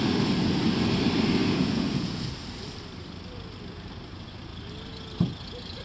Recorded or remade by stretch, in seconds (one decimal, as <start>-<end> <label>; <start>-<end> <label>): 0.0-1.4 recorded; 1.4-2.3 remade; 2.3-5.8 recorded